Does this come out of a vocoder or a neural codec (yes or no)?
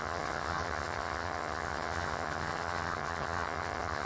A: yes